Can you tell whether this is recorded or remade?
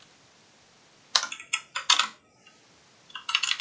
recorded